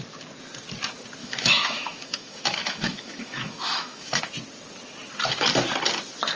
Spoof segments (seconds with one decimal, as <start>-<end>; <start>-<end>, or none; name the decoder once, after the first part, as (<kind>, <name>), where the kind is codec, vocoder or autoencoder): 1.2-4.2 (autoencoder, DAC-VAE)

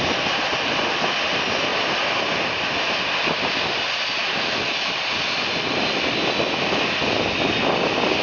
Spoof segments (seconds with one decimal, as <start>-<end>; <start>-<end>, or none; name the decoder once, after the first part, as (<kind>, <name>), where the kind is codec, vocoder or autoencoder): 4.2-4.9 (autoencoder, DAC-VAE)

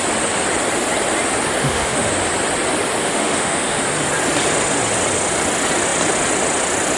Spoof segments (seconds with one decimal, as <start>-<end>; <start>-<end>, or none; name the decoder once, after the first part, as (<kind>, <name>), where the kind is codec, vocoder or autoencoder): 1.6-2.1 (autoencoder, DAC-VAE); 3.0-3.8

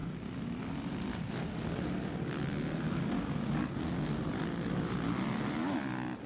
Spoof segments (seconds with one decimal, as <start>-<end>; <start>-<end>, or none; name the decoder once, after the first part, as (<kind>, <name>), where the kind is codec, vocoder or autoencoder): none

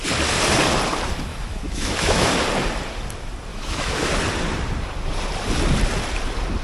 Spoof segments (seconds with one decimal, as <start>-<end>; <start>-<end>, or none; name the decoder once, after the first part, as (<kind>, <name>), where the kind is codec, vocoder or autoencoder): 1.3-2.3 (autoencoder, DAC-VAE); 3.5-4.1

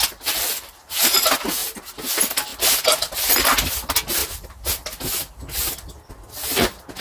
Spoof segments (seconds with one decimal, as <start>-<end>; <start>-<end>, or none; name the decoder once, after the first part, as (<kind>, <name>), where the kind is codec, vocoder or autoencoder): none